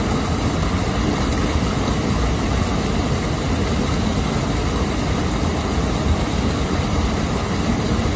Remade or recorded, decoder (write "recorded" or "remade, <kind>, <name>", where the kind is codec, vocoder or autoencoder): recorded